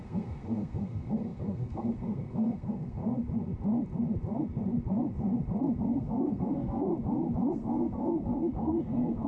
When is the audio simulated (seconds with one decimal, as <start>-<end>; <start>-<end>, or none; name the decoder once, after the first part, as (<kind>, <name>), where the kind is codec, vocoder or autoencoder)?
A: 0.0-3.0 (codec, SNAC); 5.8-6.9; 7.5-9.3